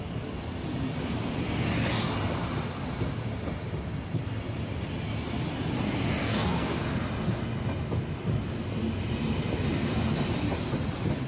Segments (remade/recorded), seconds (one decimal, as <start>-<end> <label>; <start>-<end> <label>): 0.0-6.2 recorded; 6.2-6.8 remade; 6.8-11.3 recorded